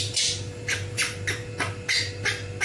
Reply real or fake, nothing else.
real